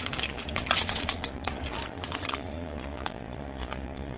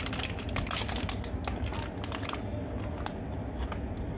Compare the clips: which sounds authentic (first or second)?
second